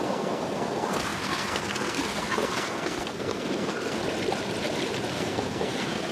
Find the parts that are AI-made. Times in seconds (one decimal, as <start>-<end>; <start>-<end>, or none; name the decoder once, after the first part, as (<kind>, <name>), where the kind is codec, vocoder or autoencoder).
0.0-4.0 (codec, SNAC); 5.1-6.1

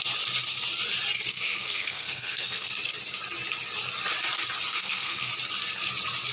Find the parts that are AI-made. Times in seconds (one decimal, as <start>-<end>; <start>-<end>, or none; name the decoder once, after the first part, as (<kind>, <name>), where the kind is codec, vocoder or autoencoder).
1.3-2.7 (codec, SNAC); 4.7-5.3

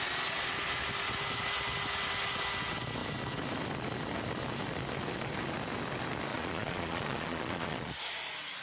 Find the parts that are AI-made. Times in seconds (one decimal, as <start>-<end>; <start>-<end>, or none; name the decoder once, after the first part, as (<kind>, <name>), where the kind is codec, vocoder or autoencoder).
6.3-7.9 (vocoder, Vocos)